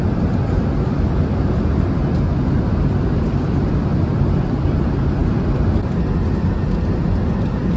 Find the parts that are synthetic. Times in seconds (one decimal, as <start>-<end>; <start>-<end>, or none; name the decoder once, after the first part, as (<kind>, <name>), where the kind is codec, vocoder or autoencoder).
none